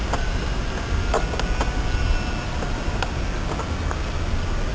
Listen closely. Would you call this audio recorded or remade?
recorded